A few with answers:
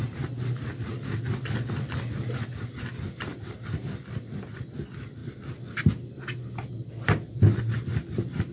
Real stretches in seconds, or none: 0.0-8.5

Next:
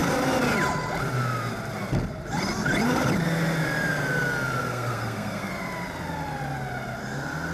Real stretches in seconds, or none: 0.0-4.6; 5.5-7.5